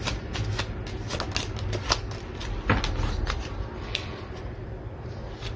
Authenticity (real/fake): real